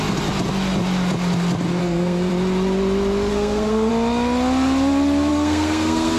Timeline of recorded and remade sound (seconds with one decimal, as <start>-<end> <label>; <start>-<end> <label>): 0.0-1.8 recorded; 1.8-2.3 remade; 2.3-3.3 recorded; 3.3-3.9 remade; 3.9-5.3 recorded; 5.3-6.2 remade